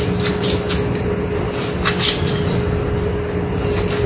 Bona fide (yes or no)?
yes